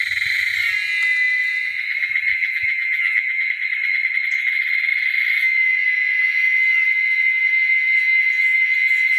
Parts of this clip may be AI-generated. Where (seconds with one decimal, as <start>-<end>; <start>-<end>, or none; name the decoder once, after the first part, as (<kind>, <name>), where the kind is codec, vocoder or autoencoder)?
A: 2.3-3.5 (vocoder, BigVGAN v2)